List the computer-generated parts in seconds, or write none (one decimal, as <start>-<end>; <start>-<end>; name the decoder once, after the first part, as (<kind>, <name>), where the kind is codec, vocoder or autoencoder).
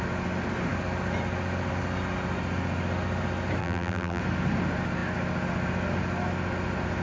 3.6-4.2 (vocoder, BigVGAN v2)